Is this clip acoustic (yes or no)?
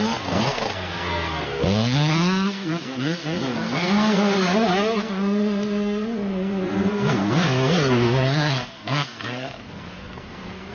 no